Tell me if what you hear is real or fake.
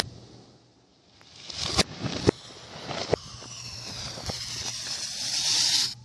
real